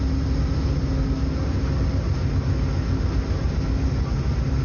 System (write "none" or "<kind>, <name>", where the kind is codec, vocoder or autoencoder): none